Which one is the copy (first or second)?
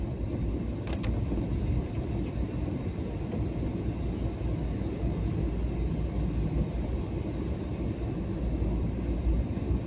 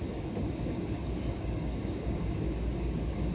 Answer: second